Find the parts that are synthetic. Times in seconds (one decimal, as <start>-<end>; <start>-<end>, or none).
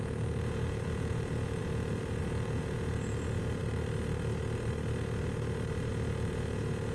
0.0-3.6; 5.9-6.9